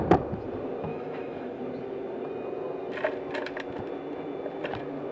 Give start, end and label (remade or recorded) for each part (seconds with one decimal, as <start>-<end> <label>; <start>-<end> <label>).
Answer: 0.0-0.9 recorded; 0.9-1.6 remade; 1.6-5.1 recorded